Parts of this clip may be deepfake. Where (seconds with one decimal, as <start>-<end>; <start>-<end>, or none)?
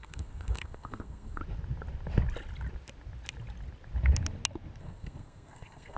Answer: 0.0-1.4; 4.8-6.0